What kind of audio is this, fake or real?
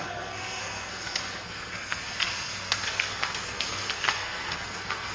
fake